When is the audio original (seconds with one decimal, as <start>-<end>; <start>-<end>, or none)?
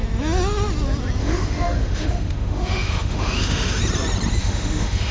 0.0-1.2; 3.8-4.4